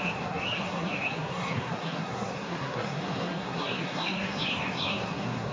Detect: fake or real fake